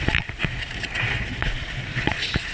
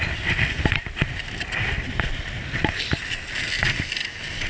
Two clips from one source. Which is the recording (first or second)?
second